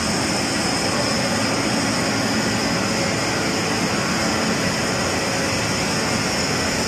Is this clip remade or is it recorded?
recorded